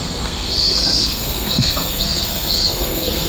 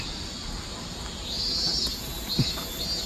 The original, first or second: second